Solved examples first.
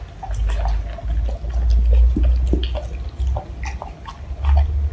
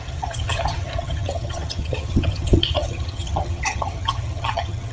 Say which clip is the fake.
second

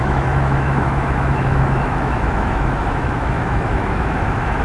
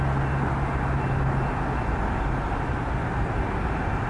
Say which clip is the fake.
first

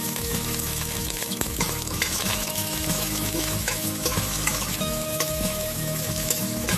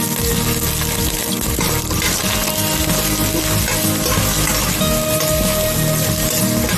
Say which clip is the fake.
first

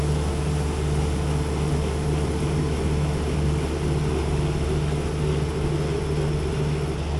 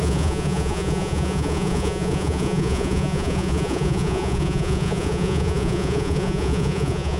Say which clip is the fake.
second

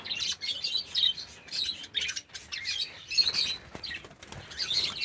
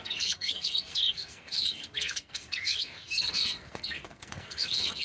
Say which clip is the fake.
second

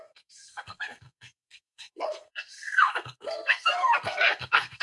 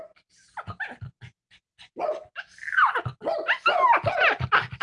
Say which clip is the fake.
first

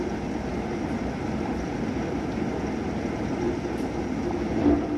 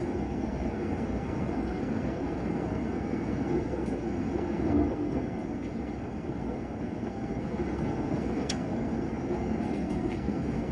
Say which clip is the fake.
second